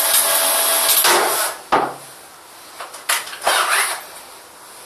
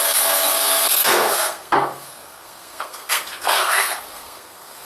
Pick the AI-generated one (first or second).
second